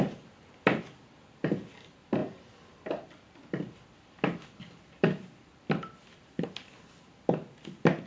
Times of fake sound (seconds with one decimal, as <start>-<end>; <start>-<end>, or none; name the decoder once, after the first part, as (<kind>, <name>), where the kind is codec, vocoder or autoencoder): none